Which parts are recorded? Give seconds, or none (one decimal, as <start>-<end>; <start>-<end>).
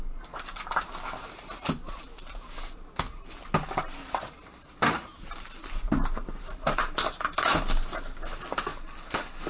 0.0-9.5